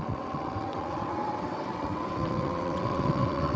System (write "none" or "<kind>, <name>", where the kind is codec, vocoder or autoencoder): vocoder, WaveNeXt